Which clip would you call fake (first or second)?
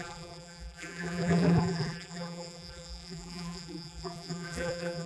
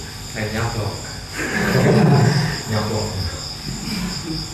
first